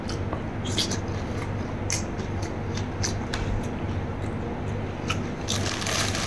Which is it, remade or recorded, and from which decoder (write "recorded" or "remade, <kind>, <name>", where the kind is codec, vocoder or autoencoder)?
recorded